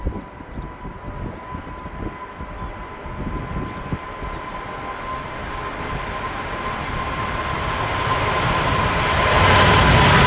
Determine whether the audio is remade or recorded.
recorded